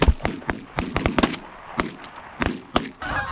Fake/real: real